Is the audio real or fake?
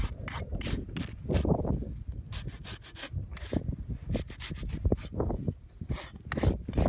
real